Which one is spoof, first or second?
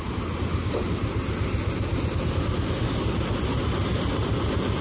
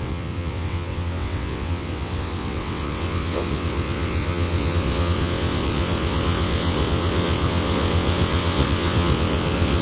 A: second